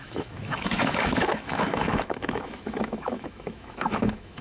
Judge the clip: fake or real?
fake